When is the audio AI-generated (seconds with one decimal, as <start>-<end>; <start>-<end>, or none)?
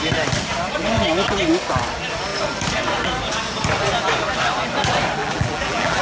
5.2-6.0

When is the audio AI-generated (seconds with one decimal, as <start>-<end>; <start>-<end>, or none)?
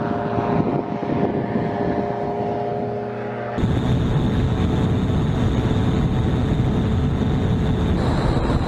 none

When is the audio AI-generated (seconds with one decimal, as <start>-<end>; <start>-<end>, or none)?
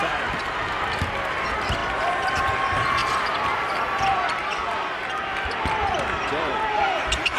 3.0-7.4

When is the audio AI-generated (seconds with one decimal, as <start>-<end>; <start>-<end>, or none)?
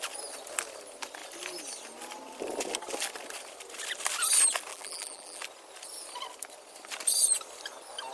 4.7-5.4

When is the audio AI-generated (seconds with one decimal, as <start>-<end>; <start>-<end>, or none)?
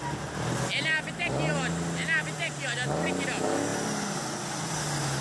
none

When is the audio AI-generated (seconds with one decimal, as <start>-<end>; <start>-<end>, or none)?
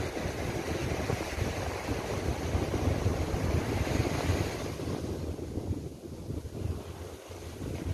0.8-2.3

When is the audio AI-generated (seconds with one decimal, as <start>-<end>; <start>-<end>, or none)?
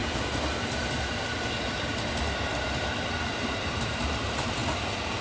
3.1-4.6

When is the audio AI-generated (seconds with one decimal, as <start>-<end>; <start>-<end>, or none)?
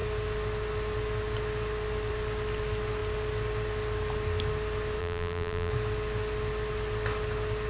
5.0-5.7